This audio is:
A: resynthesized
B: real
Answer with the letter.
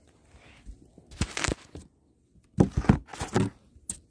B